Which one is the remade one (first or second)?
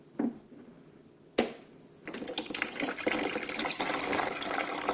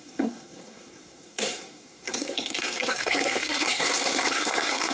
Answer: second